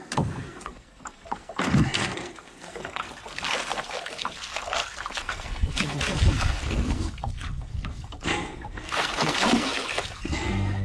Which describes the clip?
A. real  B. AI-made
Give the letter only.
B